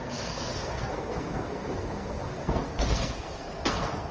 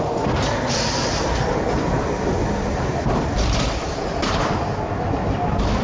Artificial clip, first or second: first